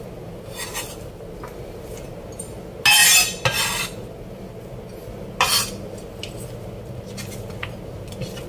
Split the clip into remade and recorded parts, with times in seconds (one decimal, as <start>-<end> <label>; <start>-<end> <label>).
0.0-8.5 recorded

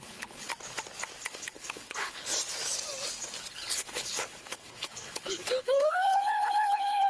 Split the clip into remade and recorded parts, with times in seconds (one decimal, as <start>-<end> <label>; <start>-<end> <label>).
0.0-0.5 remade; 0.5-1.2 recorded; 1.2-2.3 remade; 2.3-3.5 recorded; 3.5-7.1 remade

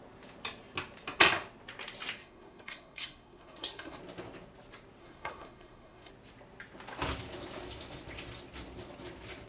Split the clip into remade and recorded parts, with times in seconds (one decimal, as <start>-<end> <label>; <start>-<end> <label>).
0.0-2.2 recorded; 2.2-4.0 remade; 4.0-5.0 recorded; 5.0-6.1 remade; 6.1-9.5 recorded

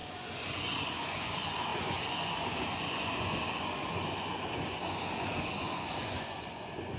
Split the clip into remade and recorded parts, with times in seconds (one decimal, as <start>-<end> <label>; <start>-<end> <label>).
0.0-7.0 remade

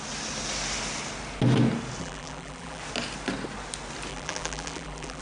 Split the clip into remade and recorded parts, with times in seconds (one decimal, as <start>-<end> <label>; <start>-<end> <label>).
0.0-2.0 recorded; 2.0-2.8 remade; 2.8-4.1 recorded; 4.1-5.2 remade